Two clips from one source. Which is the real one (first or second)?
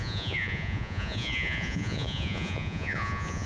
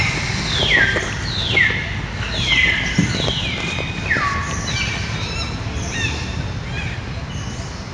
second